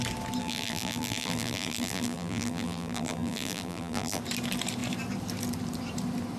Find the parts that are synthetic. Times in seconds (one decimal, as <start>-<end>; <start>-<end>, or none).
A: 0.4-4.2